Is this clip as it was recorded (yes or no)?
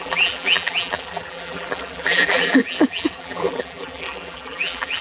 no